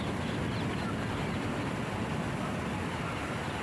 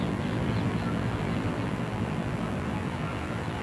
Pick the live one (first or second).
first